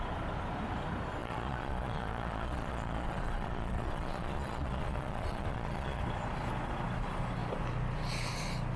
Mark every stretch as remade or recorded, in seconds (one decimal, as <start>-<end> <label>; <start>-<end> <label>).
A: 0.0-1.2 recorded; 1.2-6.0 remade; 6.0-8.8 recorded